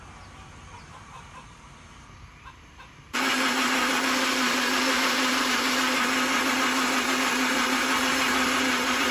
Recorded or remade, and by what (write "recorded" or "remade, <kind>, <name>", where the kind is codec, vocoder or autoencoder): remade, vocoder, BigVGAN v2